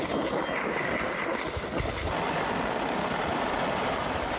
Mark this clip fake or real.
real